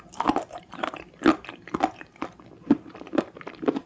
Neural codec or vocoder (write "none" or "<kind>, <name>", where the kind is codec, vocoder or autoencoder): none